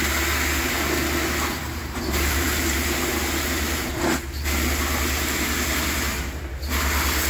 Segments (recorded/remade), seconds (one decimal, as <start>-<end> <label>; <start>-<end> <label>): 0.0-1.6 recorded; 1.6-3.9 remade; 3.9-7.3 recorded